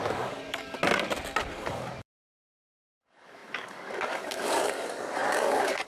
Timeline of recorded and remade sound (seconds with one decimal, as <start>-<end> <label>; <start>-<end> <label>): 0.0-0.8 remade; 0.8-1.4 recorded; 1.4-5.9 remade